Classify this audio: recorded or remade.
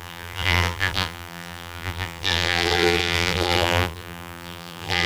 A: remade